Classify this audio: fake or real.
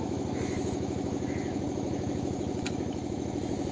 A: fake